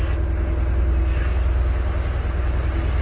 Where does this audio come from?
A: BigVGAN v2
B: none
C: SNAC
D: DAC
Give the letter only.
B